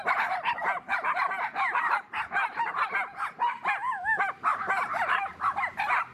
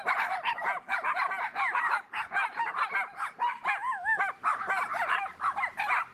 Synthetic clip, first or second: first